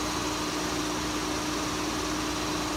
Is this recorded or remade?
recorded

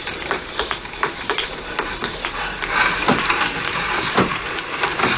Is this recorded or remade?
remade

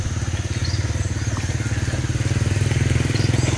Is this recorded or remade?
recorded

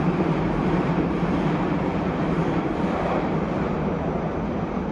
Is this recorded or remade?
remade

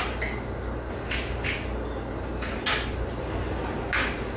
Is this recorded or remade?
recorded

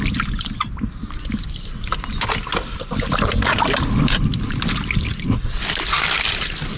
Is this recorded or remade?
recorded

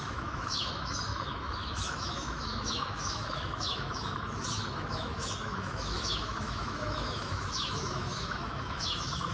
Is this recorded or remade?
remade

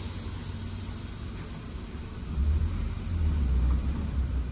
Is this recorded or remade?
recorded